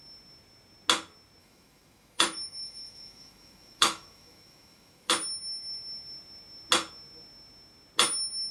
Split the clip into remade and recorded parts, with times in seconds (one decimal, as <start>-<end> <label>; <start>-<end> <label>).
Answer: 0.0-1.4 recorded; 1.4-5.1 remade; 5.1-8.5 recorded

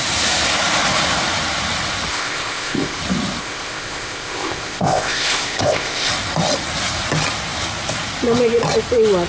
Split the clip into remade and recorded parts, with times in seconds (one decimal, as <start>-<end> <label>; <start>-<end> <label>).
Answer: 0.0-2.1 recorded; 2.1-3.0 remade; 3.0-3.4 recorded; 3.4-6.1 remade; 6.1-9.3 recorded

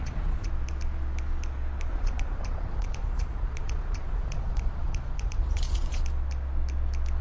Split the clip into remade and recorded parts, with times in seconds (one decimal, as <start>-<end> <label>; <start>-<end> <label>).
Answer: 0.0-0.5 remade; 0.5-1.9 recorded; 1.9-6.0 remade; 6.0-7.2 recorded

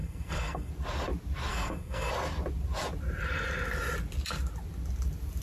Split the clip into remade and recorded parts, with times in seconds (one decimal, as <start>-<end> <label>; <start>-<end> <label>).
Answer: 0.0-0.7 remade; 0.7-1.5 recorded; 1.5-2.1 remade; 2.1-5.4 recorded

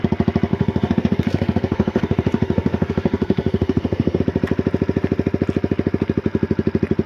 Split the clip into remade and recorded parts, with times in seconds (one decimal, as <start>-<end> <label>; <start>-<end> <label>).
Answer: 0.0-0.5 recorded; 0.5-4.2 remade; 4.2-7.1 recorded

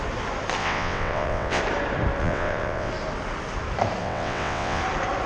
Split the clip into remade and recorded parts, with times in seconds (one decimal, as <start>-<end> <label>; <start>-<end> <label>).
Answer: 0.0-0.6 recorded; 0.6-1.6 remade; 1.6-2.2 recorded; 2.2-2.9 remade; 2.9-4.0 recorded; 4.0-4.8 remade; 4.8-5.3 recorded

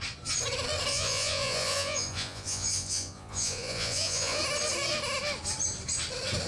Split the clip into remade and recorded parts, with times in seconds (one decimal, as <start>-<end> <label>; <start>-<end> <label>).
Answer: 0.0-0.9 recorded; 0.9-4.4 remade; 4.4-6.5 recorded